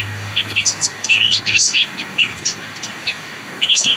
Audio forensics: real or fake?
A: fake